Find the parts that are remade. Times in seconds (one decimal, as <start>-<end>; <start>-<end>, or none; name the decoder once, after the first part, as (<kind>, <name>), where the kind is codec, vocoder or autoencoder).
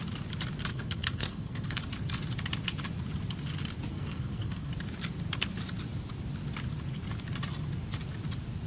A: 0.7-1.8 (codec, SNAC); 3.9-4.7